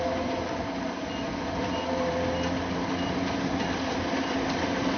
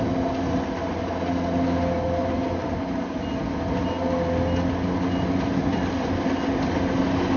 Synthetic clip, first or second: first